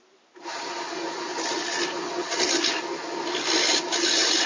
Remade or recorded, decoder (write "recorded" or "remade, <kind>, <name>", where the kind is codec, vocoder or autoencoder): recorded